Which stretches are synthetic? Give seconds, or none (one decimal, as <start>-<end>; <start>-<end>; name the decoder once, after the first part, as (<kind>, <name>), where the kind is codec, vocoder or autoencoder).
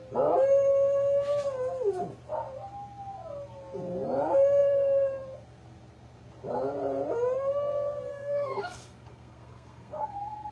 8.1-10.5 (codec, SNAC)